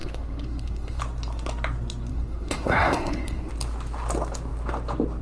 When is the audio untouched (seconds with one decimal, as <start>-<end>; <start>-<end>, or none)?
1.0-2.1; 3.5-5.2